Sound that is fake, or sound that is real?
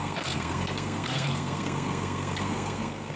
fake